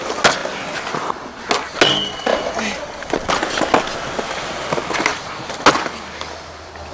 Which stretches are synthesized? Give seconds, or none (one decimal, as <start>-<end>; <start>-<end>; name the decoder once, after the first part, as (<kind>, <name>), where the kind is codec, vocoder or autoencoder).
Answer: 2.3-3.3 (vocoder, BigVGAN v2); 5.1-5.6